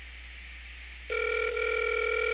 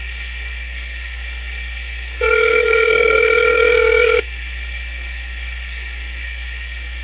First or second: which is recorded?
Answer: first